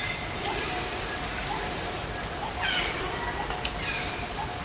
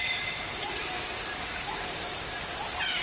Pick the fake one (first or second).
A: second